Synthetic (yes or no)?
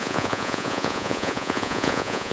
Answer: yes